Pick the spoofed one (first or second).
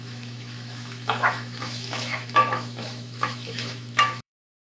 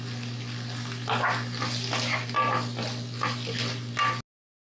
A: first